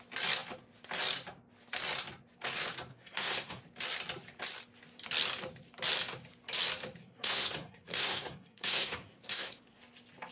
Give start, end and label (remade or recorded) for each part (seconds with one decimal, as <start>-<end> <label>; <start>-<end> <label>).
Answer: 0.0-2.9 recorded; 2.9-3.6 remade; 3.6-7.0 recorded; 7.0-9.8 remade; 9.8-10.3 recorded